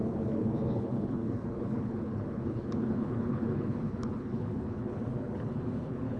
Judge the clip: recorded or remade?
remade